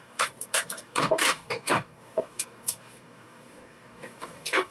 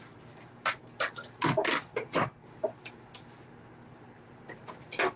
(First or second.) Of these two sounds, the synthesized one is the first